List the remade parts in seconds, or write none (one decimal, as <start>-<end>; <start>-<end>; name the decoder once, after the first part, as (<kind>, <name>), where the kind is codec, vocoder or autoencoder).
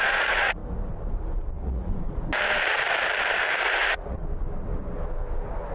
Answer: 0.0-0.6 (vocoder, Vocos); 1.5-1.9; 3.6-4.2